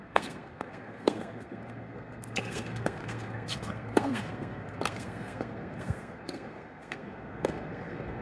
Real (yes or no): no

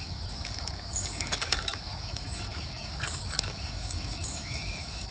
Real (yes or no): no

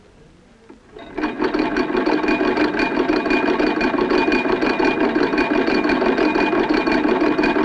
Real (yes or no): yes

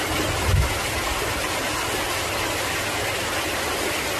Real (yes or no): yes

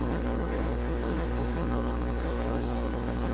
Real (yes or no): no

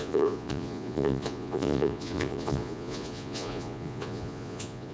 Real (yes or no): no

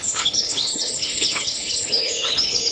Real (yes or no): no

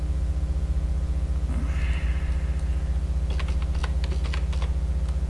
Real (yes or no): yes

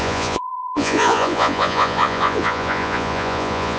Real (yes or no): no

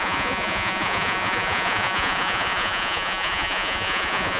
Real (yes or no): no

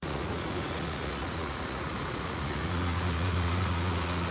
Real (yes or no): no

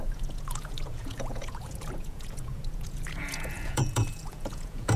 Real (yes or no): no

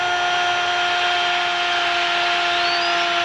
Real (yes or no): yes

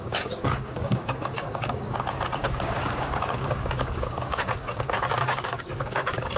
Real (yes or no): no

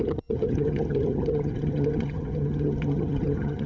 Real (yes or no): no